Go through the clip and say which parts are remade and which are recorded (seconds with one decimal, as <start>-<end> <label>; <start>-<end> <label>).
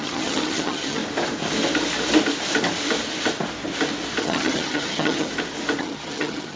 0.0-1.0 remade; 1.0-4.2 recorded; 4.2-5.3 remade; 5.3-5.8 recorded; 5.8-6.6 remade